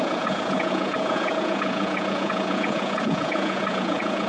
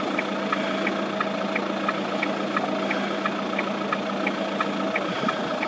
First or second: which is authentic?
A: second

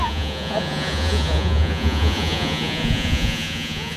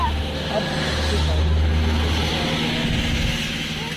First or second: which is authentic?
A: second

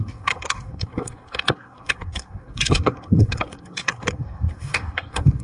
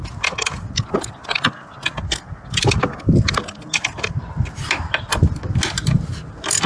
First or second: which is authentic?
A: second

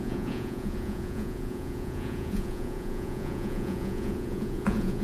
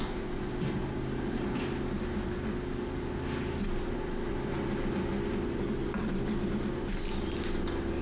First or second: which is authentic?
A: second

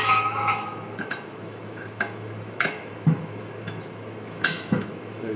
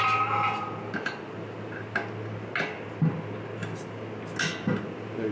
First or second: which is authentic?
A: second